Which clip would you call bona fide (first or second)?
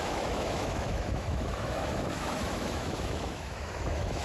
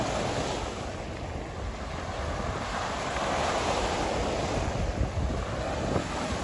second